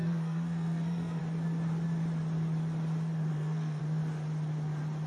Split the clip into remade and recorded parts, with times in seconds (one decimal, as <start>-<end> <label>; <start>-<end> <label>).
0.0-1.2 remade; 1.2-3.3 recorded; 3.3-3.8 remade; 3.8-5.1 recorded